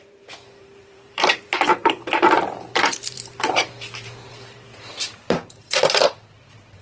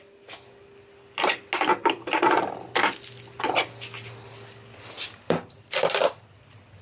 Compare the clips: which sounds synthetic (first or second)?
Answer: first